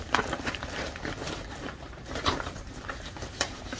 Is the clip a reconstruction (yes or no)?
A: yes